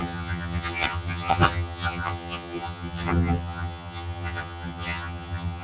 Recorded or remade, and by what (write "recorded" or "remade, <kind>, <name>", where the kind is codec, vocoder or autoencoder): remade, vocoder, HiFi-GAN